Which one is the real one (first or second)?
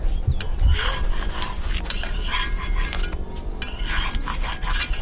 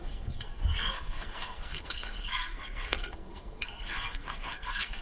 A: first